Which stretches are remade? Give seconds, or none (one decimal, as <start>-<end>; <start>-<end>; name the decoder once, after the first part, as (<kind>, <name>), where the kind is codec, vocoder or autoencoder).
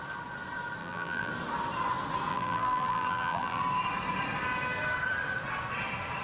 0.8-1.3 (vocoder, BigVGAN v2); 2.3-3.6